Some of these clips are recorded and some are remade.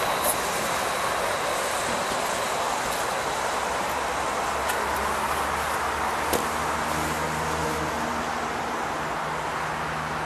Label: recorded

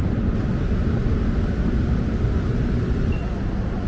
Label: recorded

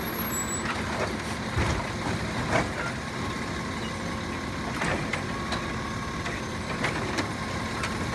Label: recorded